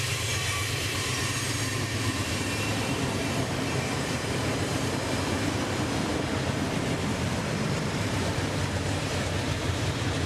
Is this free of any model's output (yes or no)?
no